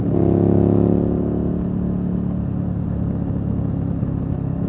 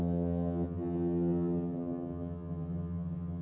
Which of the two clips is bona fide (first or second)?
first